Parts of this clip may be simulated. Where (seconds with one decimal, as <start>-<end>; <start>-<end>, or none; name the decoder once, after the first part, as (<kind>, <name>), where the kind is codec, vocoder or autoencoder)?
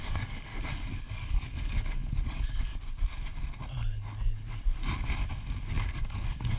0.0-0.5 (codec, DAC); 1.0-2.7; 5.7-6.6